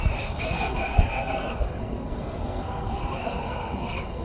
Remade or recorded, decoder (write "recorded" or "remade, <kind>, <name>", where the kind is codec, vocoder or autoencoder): remade, codec, SNAC